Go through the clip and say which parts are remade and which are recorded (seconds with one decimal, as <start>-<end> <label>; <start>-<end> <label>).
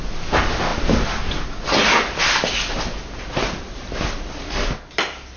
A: 0.0-5.4 recorded